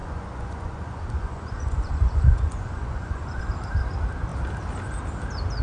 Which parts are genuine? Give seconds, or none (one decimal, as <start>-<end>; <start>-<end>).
3.4-5.6